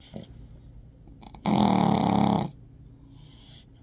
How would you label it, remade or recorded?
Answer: recorded